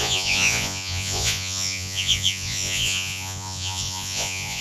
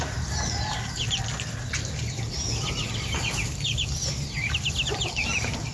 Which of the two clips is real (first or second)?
second